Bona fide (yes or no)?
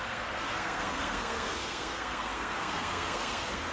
no